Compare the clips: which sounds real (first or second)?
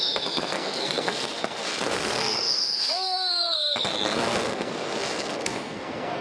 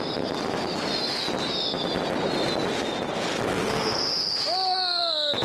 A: second